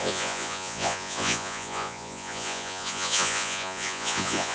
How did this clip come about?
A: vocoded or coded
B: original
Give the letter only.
A